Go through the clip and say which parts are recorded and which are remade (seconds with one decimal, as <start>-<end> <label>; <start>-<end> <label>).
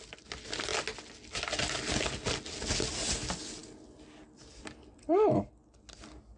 0.0-6.4 recorded